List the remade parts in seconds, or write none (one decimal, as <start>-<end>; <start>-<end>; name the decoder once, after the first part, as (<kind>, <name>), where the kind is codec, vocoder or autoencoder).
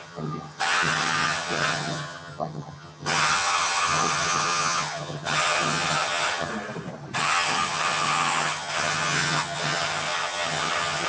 0.0-6.5 (vocoder, HiFi-GAN); 7.2-11.1